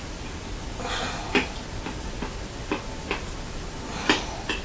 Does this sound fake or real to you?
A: real